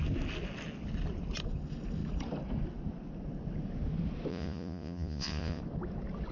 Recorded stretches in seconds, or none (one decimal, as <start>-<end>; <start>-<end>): 0.0-4.3; 5.6-6.3